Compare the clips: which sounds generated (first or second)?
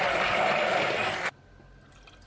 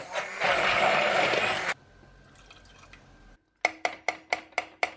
first